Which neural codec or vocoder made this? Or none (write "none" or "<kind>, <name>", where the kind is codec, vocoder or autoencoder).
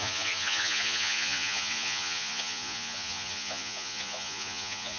vocoder, Vocos